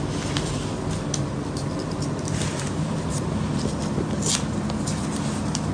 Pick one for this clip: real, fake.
real